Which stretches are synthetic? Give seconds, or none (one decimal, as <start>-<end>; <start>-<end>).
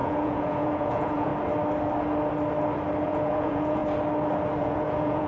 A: 0.0-1.3; 3.0-3.8; 4.6-5.3